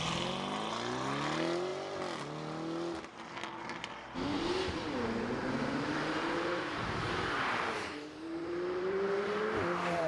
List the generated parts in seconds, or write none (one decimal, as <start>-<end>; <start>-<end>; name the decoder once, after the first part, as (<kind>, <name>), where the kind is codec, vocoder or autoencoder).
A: 5.4-9.4 (vocoder, BigVGAN v2)